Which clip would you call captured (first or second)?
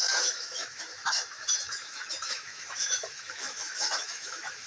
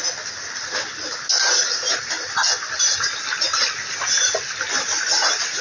second